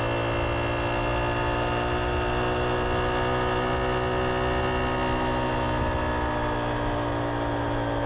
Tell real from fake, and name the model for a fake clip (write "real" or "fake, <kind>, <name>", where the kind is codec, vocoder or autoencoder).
real